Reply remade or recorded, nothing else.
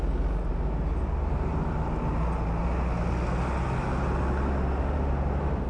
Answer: recorded